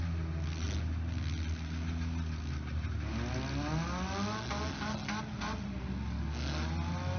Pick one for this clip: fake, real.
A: real